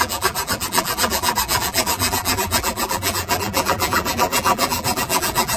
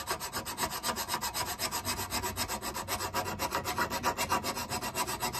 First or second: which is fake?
first